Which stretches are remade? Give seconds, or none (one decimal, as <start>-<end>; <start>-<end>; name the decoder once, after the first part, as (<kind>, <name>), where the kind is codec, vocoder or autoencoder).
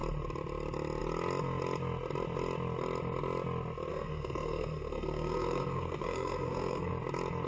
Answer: 3.9-6.9 (codec, SNAC)